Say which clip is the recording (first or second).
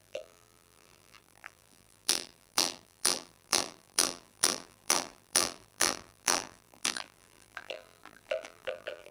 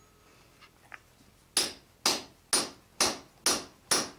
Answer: second